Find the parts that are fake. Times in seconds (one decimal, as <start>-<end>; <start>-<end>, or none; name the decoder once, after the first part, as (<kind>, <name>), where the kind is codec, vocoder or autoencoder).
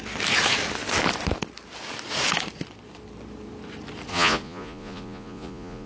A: 4.1-5.9 (vocoder, Vocos)